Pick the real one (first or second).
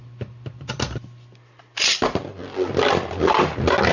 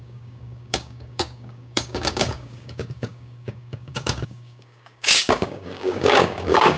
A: first